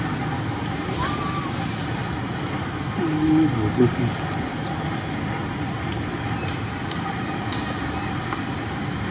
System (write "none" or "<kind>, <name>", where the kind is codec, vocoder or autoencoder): none